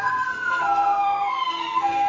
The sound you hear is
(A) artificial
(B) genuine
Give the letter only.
A